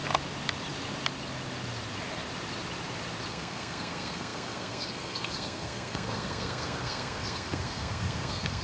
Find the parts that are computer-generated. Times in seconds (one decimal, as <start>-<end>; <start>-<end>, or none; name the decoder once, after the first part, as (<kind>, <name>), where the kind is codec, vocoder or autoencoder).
3.3-8.6 (codec, SNAC)